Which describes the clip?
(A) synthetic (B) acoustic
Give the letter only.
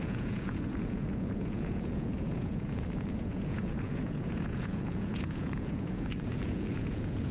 A